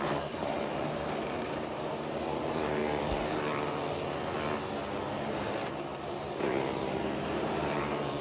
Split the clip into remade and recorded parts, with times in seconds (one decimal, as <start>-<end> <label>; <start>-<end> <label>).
0.0-2.8 remade; 2.8-6.4 recorded; 6.4-8.2 remade

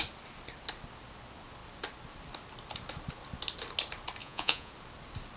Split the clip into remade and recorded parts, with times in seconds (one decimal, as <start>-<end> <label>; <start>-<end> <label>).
0.0-4.2 recorded; 4.2-4.7 remade; 4.7-5.4 recorded